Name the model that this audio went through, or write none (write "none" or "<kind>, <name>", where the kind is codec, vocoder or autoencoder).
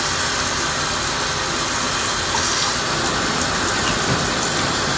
none